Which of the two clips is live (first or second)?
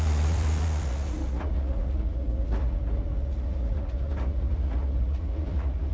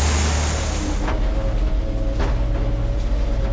second